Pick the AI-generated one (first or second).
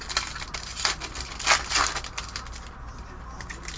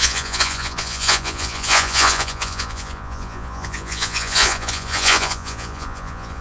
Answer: second